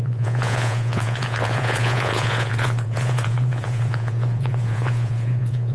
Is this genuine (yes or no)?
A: no